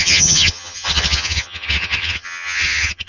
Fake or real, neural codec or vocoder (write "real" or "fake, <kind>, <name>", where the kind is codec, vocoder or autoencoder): fake, vocoder, HiFi-GAN